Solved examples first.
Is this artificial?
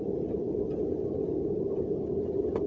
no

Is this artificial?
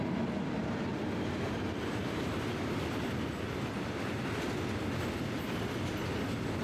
no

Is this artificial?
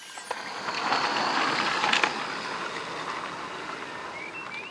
no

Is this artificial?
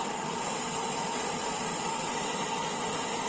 yes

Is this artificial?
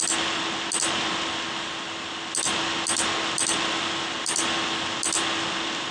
no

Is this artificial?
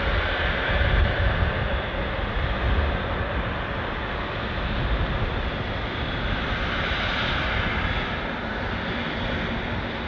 no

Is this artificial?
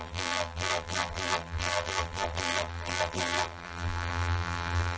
yes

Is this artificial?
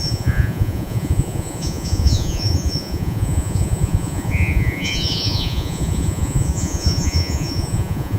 yes